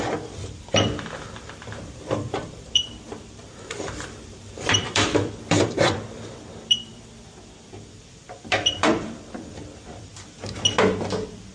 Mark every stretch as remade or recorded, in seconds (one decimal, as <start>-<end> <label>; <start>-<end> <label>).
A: 0.0-10.1 remade; 10.1-11.5 recorded